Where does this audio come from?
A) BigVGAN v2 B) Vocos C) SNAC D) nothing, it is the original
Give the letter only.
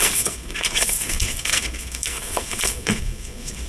C